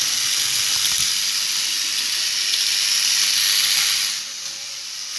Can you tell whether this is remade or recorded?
recorded